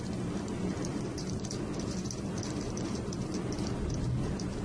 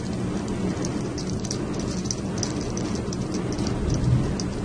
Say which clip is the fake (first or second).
first